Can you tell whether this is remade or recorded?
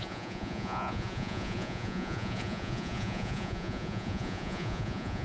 remade